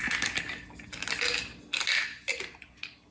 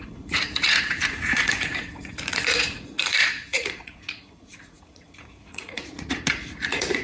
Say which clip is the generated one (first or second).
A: second